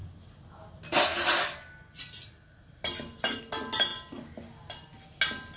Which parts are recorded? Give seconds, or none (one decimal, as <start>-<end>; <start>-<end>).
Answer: 0.0-5.6